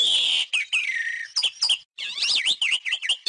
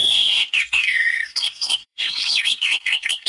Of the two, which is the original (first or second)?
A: first